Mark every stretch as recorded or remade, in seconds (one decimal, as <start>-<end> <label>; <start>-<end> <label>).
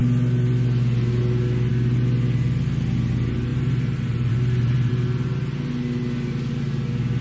0.0-3.5 recorded; 3.5-4.9 remade; 4.9-7.2 recorded